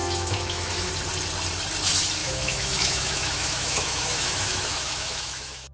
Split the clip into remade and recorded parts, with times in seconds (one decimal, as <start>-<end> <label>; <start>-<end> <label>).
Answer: 0.0-0.9 remade; 0.9-2.2 recorded; 2.2-5.7 remade